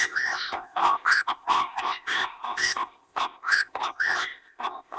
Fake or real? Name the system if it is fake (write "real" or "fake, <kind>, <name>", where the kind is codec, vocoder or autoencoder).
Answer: fake, codec, ZipCodec